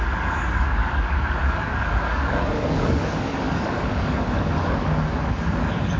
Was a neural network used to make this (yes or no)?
yes